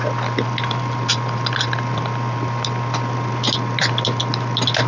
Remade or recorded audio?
recorded